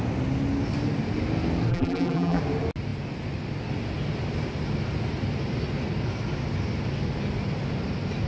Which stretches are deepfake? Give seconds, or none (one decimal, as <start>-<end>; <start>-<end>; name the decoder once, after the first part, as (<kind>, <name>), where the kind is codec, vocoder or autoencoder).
1.7-2.4 (vocoder, BigVGAN v2)